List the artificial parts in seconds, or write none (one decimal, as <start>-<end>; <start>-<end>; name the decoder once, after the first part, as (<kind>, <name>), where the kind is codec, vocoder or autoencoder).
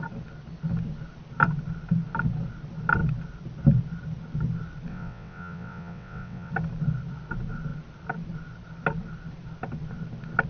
4.9-6.5 (vocoder, WaveNeXt)